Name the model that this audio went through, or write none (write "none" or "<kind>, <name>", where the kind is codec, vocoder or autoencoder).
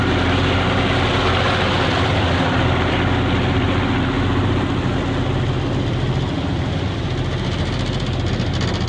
none